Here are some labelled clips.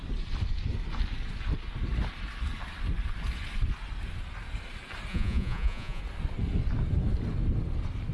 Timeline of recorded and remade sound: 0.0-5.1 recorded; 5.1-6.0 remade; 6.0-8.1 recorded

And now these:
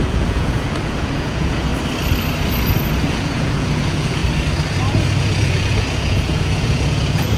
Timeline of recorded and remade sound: 0.0-1.7 remade; 1.7-3.1 recorded; 3.1-4.2 remade; 4.2-5.2 recorded; 5.2-7.4 remade

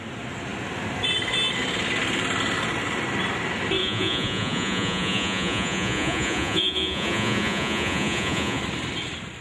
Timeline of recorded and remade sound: 0.0-3.8 recorded; 3.8-8.6 remade; 8.6-9.4 recorded

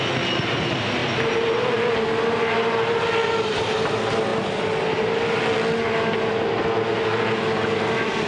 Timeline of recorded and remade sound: 0.0-8.3 recorded

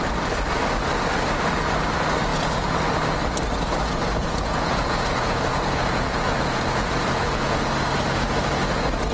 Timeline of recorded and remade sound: 0.0-2.3 recorded; 2.3-2.8 remade; 2.8-4.2 recorded; 4.2-7.6 remade; 7.6-9.1 recorded